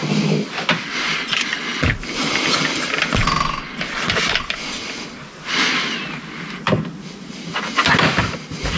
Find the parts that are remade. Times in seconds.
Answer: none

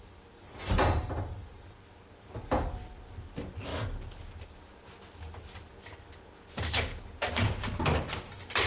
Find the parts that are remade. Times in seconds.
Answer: none

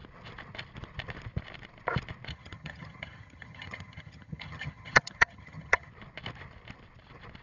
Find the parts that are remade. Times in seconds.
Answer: 2.3-5.9 (vocoder, HiFi-GAN)

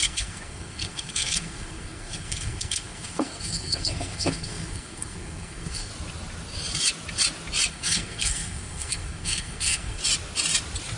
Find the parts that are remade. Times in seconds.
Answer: 0.0-5.9 (codec, SNAC); 7.7-10.0

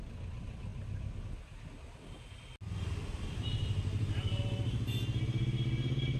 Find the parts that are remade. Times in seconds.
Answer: none

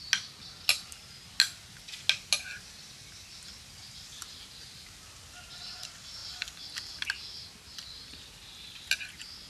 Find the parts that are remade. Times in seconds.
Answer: 6.2-7.0 (vocoder, BigVGAN v2)

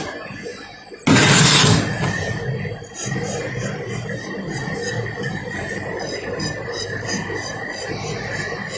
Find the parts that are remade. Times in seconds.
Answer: none

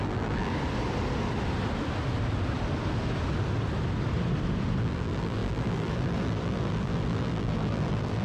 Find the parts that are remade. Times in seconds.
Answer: 0.0-0.5 (vocoder, BigVGAN v2); 4.8-8.2